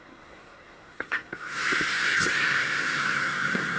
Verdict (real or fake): fake